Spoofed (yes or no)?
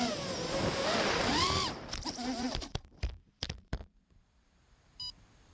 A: yes